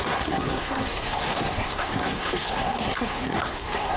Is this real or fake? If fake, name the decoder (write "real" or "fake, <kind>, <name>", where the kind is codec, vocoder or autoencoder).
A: fake, codec, SNAC